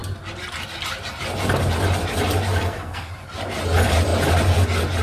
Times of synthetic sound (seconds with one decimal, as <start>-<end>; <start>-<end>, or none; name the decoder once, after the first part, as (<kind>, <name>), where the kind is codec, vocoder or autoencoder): 2.5-3.1 (codec, SNAC)